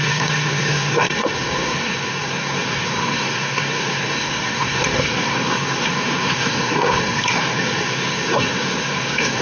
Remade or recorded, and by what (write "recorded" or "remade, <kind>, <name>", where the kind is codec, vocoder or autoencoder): remade, codec, SNAC